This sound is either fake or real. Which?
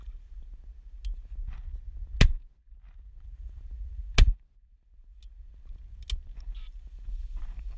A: real